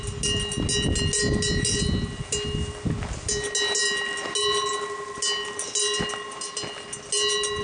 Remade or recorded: recorded